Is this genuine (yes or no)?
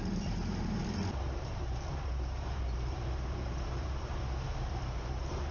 no